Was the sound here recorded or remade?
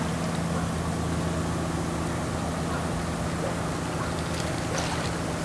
recorded